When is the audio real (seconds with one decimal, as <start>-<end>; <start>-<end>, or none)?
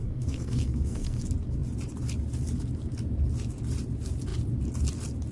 1.2-5.3